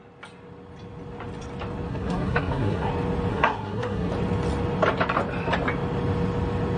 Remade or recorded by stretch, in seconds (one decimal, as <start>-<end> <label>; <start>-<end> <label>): 0.0-1.9 recorded; 1.9-2.9 remade; 2.9-3.3 recorded; 3.3-4.1 remade; 4.1-6.8 recorded